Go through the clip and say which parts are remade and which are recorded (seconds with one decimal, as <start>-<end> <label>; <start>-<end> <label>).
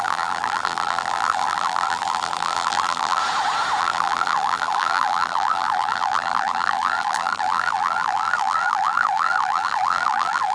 0.0-3.2 remade; 3.2-3.8 recorded; 3.8-10.5 remade